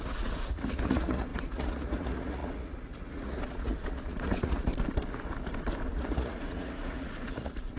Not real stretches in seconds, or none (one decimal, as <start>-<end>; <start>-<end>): 0.0-4.7; 5.9-7.8